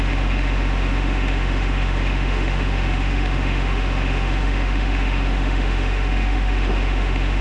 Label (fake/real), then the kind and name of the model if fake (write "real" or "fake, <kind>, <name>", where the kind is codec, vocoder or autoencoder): fake, autoencoder, DAC-VAE